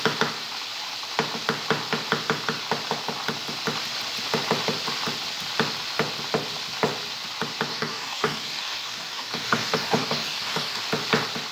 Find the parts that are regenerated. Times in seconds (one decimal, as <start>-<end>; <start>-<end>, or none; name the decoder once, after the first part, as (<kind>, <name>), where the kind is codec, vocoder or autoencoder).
7.7-10.8 (codec, DAC)